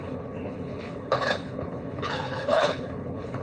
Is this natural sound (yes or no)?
no